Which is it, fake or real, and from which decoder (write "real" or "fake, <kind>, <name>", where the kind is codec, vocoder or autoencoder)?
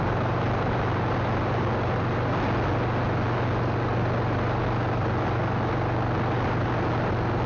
real